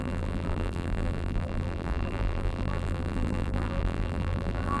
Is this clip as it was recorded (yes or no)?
no